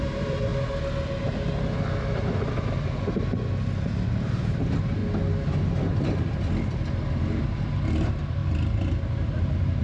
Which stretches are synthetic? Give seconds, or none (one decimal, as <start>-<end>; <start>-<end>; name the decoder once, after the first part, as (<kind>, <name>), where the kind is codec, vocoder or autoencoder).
0.0-0.5 (vocoder, BigVGAN v2); 4.1-5.0; 5.8-8.4